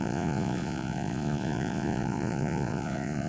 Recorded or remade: remade